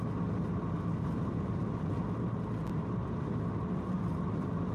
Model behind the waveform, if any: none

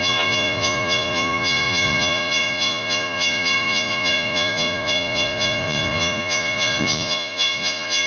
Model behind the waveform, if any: vocoder, Vocos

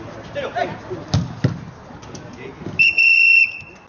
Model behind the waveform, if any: none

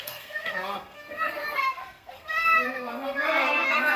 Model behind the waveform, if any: codec, SNAC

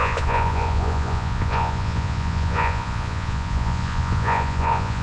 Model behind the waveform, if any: vocoder, Vocos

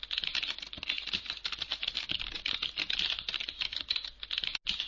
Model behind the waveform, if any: none